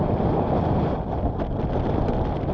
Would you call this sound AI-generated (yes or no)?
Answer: no